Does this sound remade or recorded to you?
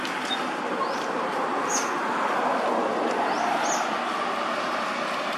recorded